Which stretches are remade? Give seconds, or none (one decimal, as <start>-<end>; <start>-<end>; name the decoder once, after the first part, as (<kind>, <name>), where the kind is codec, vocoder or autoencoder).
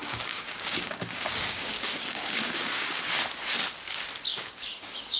0.0-3.1 (codec, DAC); 4.3-5.2